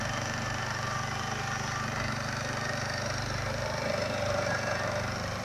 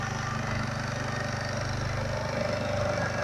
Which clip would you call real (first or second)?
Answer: second